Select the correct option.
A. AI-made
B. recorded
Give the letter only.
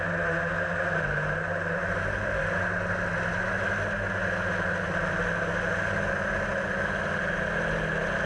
B